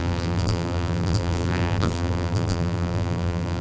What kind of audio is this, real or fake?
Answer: fake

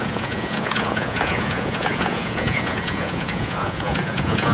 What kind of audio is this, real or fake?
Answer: fake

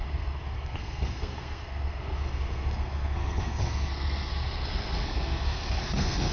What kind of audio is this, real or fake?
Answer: fake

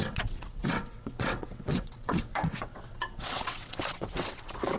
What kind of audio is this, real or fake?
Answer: fake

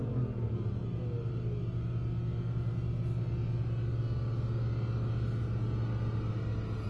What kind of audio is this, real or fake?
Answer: real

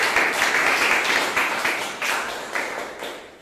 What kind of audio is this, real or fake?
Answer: real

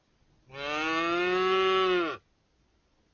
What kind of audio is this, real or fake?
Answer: real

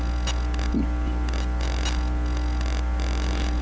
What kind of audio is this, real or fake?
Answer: real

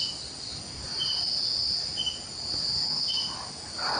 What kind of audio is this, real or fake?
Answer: real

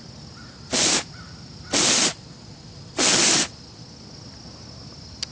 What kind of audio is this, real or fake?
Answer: real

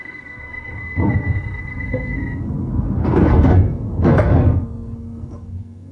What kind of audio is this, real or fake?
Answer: fake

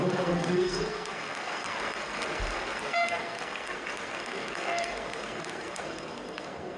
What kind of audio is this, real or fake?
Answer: fake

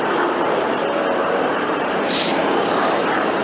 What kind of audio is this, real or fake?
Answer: fake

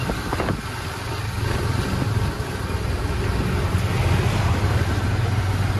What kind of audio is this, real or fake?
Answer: real